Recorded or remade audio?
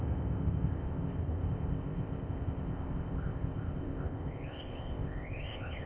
remade